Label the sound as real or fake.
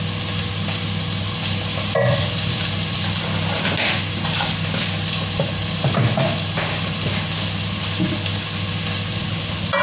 real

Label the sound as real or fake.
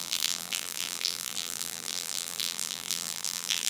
fake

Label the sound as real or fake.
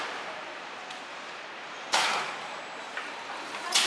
fake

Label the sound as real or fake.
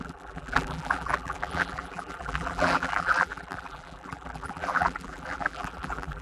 fake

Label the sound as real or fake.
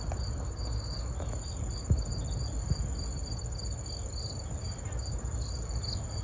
real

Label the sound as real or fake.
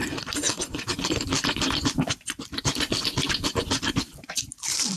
fake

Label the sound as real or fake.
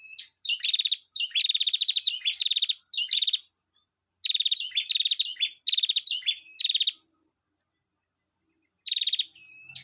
real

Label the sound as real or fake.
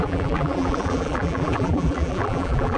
fake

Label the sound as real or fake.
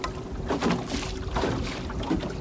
real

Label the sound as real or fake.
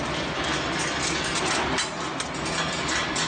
real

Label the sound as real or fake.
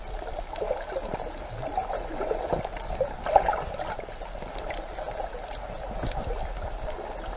real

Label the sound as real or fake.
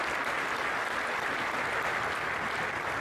real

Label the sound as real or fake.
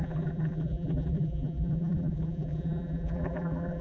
fake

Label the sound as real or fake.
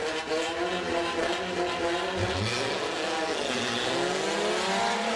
real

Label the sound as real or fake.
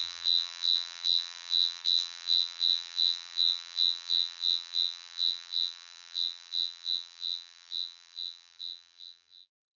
fake